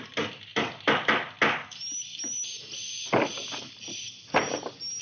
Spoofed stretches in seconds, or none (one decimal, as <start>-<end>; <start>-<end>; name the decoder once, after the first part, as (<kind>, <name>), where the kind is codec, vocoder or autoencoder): none